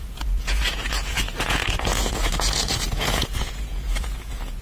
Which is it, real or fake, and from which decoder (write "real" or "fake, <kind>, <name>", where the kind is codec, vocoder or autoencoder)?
fake, vocoder, Vocos